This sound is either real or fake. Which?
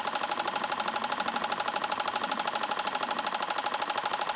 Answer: real